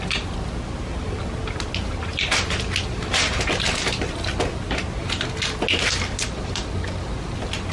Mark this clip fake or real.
real